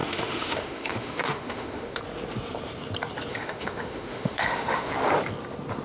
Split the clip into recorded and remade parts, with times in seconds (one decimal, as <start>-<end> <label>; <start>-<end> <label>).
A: 0.0-2.0 remade; 2.0-3.3 recorded; 3.3-4.9 remade; 4.9-5.8 recorded